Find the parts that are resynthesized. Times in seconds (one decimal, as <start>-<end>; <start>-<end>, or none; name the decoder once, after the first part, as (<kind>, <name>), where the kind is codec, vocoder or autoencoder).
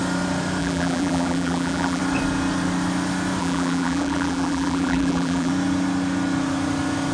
0.6-2.0 (vocoder, BigVGAN v2); 3.4-5.5